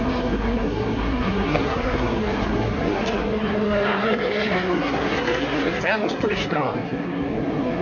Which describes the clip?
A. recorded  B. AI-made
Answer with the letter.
B